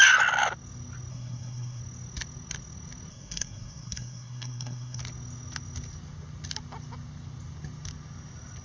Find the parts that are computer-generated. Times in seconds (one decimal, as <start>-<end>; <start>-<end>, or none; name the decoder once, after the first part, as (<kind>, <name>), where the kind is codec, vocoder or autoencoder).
1.1-1.8 (codec, SNAC); 3.1-5.0